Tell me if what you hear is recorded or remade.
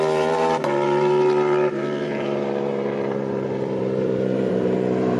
remade